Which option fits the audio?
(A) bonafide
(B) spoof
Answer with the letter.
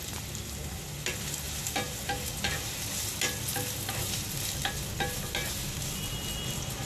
A